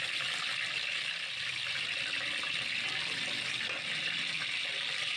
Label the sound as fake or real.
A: real